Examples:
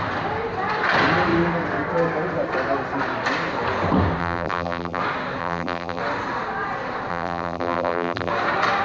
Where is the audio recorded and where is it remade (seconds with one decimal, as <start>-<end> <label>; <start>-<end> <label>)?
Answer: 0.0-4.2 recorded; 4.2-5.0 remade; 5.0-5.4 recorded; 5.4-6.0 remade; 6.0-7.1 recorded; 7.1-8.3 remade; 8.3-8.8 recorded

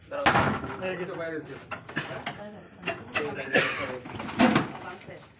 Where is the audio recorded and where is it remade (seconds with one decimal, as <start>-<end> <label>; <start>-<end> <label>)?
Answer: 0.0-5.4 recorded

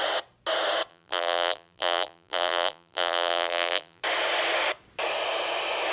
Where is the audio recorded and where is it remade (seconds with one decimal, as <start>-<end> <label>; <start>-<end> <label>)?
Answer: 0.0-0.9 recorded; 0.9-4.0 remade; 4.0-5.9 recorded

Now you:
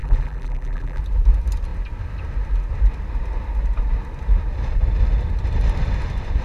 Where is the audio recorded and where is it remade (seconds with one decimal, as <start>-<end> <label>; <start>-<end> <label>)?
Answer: 0.0-1.0 remade; 1.0-6.4 recorded

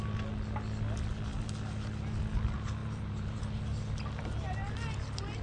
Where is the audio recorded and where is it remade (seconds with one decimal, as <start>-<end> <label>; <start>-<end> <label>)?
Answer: 0.0-2.8 recorded; 2.8-3.4 remade; 3.4-5.4 recorded